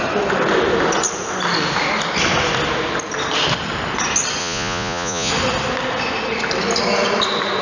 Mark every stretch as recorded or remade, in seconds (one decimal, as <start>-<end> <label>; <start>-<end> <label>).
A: 0.0-4.4 recorded; 4.4-5.3 remade; 5.3-7.6 recorded